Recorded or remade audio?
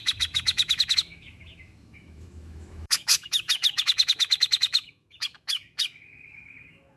remade